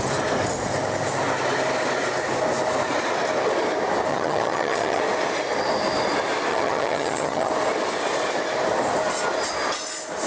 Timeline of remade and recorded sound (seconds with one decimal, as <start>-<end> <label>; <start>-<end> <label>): 0.0-4.1 recorded; 4.1-5.0 remade; 5.0-6.5 recorded; 6.5-7.5 remade; 7.5-10.3 recorded